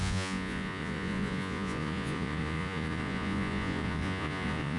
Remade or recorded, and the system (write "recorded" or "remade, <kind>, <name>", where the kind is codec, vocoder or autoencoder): remade, vocoder, Vocos